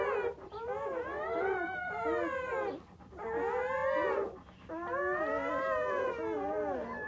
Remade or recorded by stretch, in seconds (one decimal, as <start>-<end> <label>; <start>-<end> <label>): 0.0-7.1 recorded